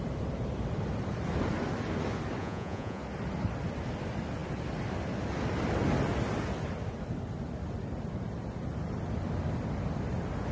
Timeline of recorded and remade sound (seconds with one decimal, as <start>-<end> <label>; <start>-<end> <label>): 0.0-2.4 recorded; 2.4-3.0 remade; 3.0-10.5 recorded